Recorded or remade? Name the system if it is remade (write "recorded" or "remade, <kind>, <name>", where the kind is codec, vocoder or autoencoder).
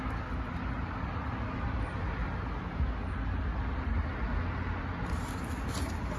recorded